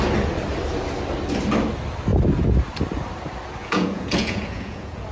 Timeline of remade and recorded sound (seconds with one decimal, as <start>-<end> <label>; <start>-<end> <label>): 0.0-3.6 recorded; 3.6-5.1 remade